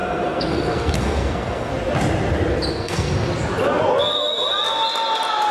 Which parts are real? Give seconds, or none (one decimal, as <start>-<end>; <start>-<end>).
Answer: 1.7-2.7; 3.1-5.5